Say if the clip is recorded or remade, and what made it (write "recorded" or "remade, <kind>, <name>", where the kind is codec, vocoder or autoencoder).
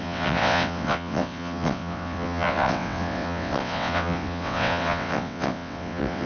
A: remade, vocoder, WaveNeXt